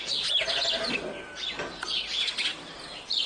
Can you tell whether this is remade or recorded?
recorded